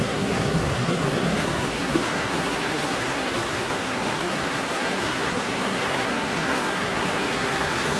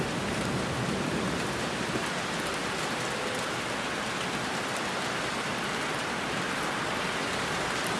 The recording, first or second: second